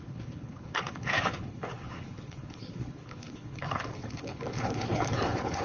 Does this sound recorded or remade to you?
remade